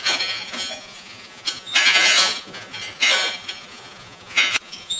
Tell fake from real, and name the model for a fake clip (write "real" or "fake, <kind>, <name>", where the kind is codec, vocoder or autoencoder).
fake, vocoder, Vocos